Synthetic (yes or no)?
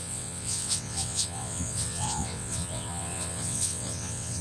yes